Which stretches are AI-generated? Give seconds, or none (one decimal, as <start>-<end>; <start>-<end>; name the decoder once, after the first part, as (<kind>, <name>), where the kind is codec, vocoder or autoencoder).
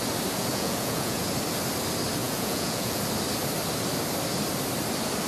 0.5-1.2 (vocoder, Vocos); 2.2-3.0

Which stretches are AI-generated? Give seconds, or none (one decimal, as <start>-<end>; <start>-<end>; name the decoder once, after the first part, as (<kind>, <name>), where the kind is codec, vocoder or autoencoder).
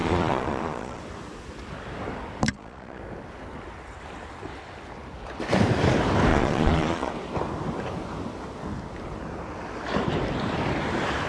0.0-1.0 (vocoder, Vocos); 2.5-3.0; 6.3-7.1